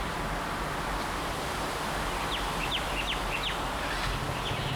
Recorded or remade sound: recorded